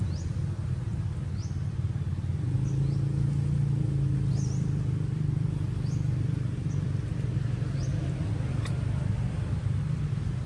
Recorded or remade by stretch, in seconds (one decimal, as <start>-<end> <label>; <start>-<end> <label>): 0.0-0.9 remade; 0.9-4.3 recorded; 4.3-10.5 remade

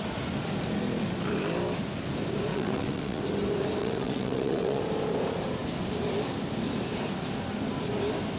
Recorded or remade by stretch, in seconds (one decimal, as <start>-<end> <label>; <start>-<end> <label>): 0.0-2.5 recorded; 2.5-3.2 remade; 3.2-3.8 recorded; 3.8-4.8 remade; 4.8-8.4 recorded

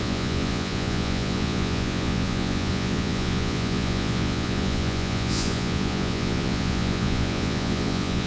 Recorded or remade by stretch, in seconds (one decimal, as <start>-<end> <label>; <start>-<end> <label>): 0.0-8.3 remade

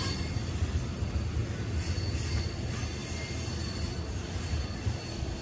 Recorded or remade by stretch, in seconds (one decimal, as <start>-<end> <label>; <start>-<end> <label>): 0.0-5.4 recorded

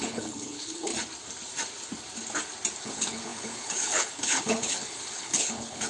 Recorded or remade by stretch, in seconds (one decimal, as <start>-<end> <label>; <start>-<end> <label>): 0.0-0.9 remade; 0.9-2.8 recorded; 2.8-5.9 remade